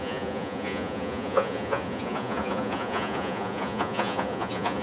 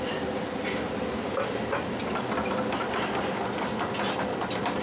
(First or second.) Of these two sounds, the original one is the second